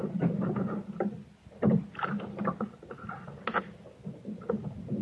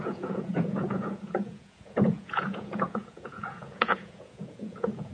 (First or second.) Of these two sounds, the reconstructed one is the second